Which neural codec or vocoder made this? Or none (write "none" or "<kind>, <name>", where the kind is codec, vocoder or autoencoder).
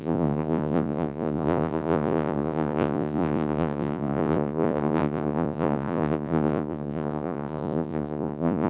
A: vocoder, Vocos